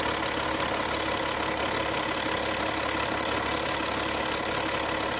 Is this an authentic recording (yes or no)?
yes